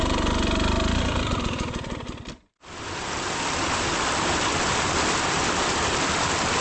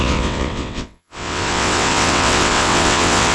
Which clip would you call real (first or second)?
first